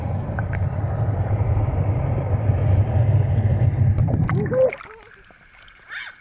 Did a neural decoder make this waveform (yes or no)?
no